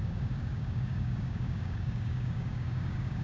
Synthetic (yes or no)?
yes